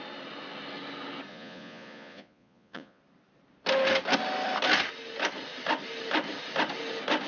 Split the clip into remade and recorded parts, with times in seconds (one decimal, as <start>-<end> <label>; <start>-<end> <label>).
0.0-1.3 recorded; 1.3-3.0 remade; 3.0-7.3 recorded